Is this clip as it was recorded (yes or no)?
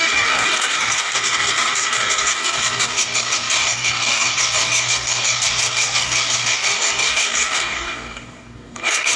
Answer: no